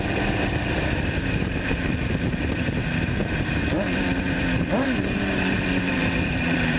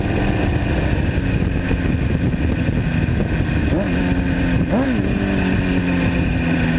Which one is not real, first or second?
first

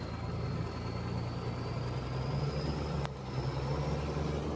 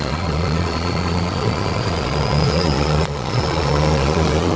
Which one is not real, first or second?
second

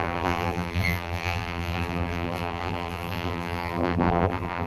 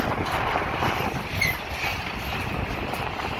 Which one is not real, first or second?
first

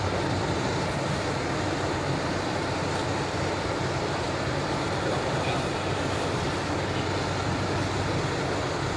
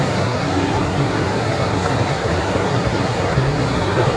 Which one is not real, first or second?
second